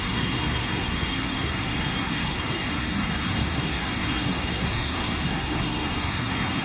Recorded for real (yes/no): no